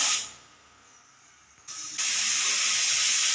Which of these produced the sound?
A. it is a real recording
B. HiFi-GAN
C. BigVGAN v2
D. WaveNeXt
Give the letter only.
A